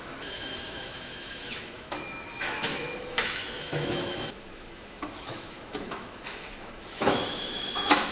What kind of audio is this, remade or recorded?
remade